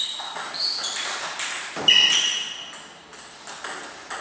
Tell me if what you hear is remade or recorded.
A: recorded